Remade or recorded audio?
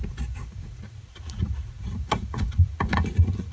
remade